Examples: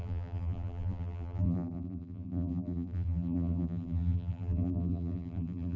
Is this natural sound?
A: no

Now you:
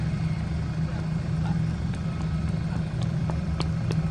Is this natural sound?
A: yes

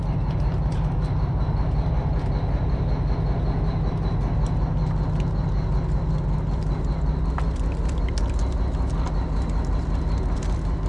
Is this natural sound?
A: yes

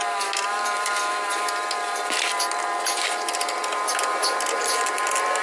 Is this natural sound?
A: yes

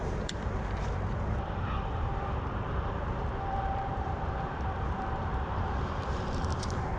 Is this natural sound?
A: no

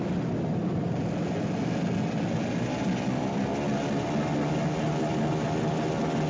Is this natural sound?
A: yes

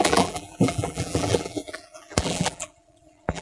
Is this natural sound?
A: no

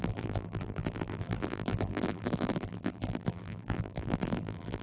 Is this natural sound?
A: no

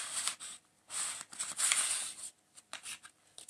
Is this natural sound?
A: no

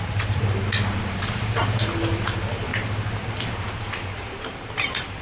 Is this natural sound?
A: no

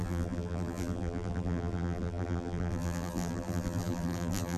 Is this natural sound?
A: no